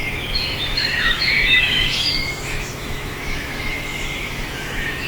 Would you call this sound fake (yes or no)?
yes